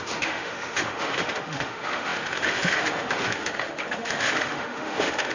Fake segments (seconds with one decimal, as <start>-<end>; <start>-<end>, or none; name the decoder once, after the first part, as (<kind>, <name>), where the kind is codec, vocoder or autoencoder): 0.0-5.3 (autoencoder, DAC-VAE)